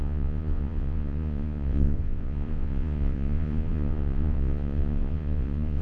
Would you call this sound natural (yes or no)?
no